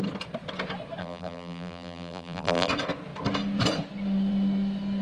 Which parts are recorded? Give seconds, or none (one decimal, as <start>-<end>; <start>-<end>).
0.0-1.0; 2.7-5.0